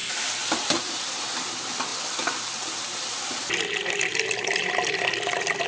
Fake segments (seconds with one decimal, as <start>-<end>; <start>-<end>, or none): none